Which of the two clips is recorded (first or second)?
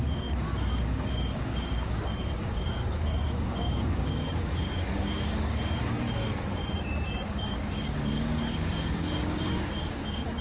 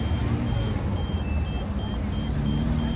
second